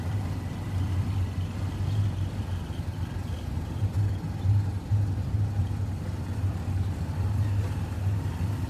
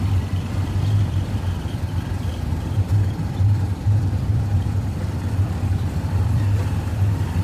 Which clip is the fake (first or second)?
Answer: second